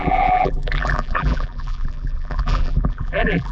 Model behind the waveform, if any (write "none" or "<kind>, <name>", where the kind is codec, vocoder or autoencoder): vocoder, BigVGAN v2